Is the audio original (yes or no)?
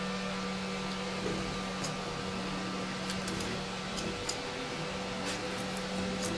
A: yes